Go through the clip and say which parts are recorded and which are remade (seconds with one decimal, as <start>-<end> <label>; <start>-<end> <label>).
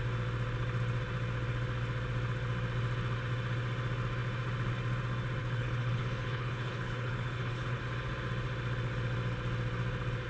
0.0-5.4 recorded; 5.4-7.8 remade; 7.8-10.3 recorded